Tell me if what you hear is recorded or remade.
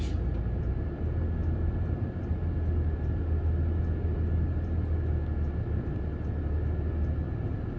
recorded